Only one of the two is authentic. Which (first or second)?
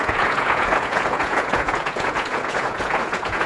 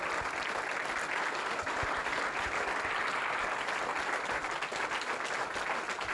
second